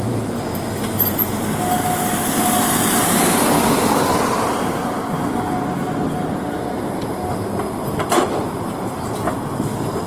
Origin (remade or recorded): recorded